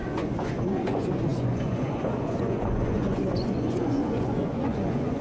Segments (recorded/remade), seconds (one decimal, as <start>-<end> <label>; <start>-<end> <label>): 0.0-5.2 remade